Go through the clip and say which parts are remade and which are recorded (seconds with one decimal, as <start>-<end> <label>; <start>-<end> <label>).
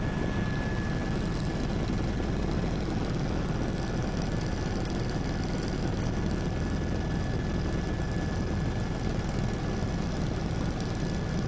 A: 0.0-11.5 recorded